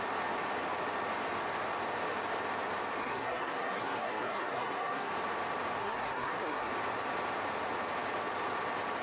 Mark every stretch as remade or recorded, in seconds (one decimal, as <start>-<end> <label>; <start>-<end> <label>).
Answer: 0.0-3.0 recorded; 3.0-5.1 remade; 5.1-5.8 recorded; 5.8-6.7 remade; 6.7-9.0 recorded